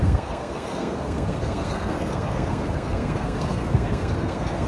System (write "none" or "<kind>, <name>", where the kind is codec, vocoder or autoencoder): codec, SNAC